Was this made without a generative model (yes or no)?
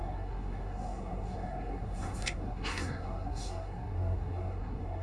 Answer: no